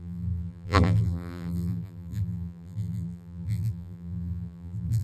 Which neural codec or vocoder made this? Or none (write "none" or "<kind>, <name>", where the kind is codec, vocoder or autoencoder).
vocoder, BigVGAN v2